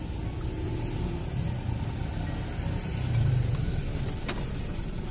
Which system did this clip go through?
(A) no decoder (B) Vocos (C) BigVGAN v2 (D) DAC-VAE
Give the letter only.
A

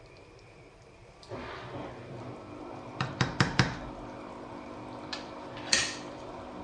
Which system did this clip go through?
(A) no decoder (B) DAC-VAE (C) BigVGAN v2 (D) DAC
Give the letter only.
C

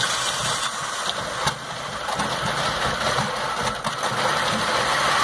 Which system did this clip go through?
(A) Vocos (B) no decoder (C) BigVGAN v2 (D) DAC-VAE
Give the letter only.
B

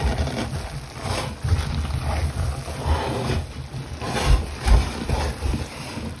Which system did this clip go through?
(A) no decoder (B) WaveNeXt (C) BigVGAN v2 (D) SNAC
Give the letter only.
A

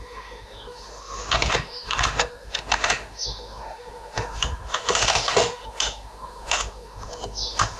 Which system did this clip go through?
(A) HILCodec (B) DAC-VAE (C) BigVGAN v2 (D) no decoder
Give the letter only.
B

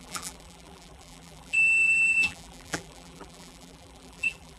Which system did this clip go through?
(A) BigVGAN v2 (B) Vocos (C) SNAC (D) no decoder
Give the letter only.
A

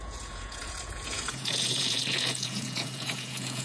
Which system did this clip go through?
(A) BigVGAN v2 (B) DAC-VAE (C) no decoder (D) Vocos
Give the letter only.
D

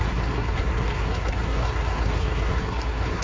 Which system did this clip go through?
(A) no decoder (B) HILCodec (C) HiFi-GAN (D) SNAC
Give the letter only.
D